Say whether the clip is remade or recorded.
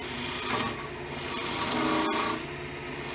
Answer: recorded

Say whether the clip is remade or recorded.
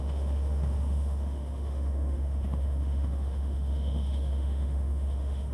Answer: remade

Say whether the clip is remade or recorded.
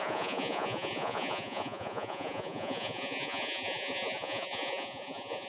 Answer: remade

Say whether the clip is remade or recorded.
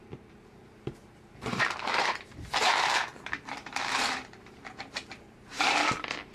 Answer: remade